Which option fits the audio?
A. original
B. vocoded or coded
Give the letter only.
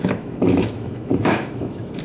B